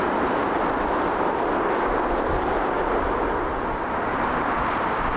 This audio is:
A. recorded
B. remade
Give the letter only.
A